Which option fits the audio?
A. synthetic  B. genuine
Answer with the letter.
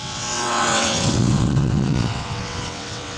A